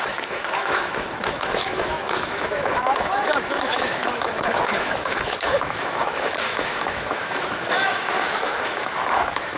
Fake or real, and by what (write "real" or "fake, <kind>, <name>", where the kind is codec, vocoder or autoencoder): fake, autoencoder, DAC-VAE